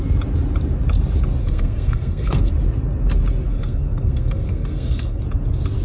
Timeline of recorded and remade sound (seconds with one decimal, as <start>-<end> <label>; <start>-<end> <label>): 0.0-1.4 recorded; 1.4-2.5 remade; 2.5-3.5 recorded; 3.5-5.2 remade; 5.2-5.8 recorded